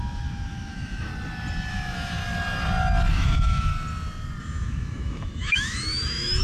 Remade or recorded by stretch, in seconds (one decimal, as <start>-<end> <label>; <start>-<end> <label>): 0.0-1.1 remade; 1.1-1.7 recorded; 1.7-2.2 remade; 2.2-3.1 recorded; 3.1-3.7 remade; 3.7-4.4 recorded; 4.4-6.4 remade

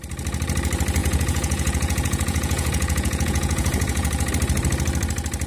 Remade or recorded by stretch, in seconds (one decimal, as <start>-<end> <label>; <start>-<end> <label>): 0.0-1.0 recorded; 1.0-4.3 remade; 4.3-5.5 recorded

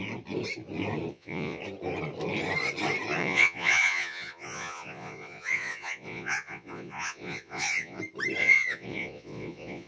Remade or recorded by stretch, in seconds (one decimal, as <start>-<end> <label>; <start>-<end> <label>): 0.0-1.1 recorded; 1.1-1.6 remade; 1.6-3.2 recorded; 3.2-8.0 remade; 8.0-8.4 recorded; 8.4-9.9 remade

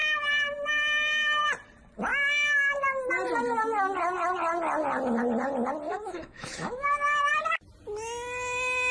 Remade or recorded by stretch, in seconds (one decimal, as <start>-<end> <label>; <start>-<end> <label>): 0.0-5.9 recorded; 5.9-7.3 remade; 7.3-8.9 recorded

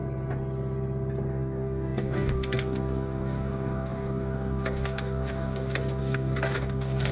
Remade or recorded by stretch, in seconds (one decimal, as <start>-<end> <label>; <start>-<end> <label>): 0.0-1.3 recorded; 1.3-7.1 remade

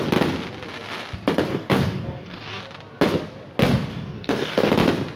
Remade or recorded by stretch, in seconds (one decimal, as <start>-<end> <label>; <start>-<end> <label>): 0.0-1.5 recorded; 1.5-2.6 remade; 2.6-3.9 recorded; 3.9-4.7 remade; 4.7-5.2 recorded